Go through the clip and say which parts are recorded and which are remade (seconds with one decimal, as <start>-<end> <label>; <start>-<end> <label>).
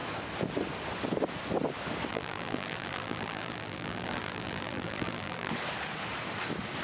0.0-2.1 recorded; 2.1-5.5 remade; 5.5-6.8 recorded